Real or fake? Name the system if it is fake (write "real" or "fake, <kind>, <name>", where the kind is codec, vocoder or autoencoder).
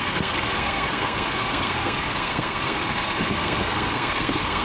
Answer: fake, codec, SNAC